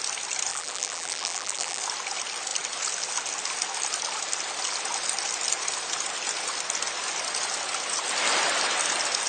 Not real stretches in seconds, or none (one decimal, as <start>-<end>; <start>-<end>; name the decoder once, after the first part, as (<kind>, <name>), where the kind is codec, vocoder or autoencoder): 0.5-1.8 (vocoder, BigVGAN v2)

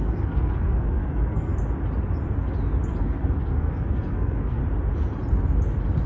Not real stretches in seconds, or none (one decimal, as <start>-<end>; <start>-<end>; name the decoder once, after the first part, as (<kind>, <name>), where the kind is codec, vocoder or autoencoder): 0.0-1.5 (codec, SNAC); 3.0-4.6

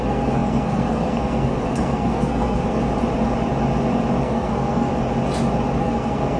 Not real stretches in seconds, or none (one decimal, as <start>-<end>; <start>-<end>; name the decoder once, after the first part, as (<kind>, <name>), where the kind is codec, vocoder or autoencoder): 0.0-2.9 (codec, SNAC); 4.2-4.9; 5.8-6.4

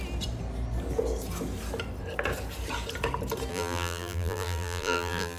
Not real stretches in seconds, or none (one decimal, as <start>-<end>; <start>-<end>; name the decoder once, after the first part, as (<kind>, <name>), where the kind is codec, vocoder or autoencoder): 3.5-5.4 (vocoder, BigVGAN v2)